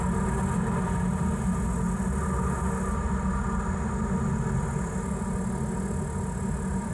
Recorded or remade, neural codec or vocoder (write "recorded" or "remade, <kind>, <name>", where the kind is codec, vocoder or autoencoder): recorded